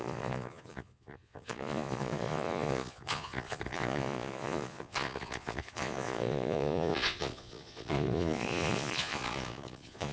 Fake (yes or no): yes